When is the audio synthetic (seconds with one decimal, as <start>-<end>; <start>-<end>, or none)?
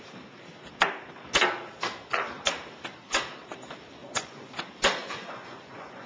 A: 4.0-4.5; 5.0-6.1